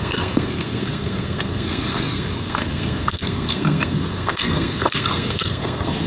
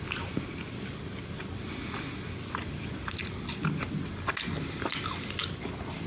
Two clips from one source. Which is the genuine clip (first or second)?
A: second